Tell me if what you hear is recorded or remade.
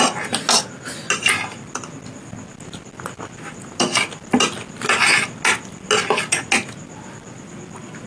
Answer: recorded